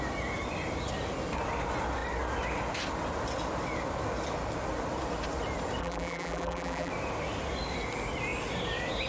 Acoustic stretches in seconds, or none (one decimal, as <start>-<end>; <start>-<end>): 0.0-5.8; 6.9-9.1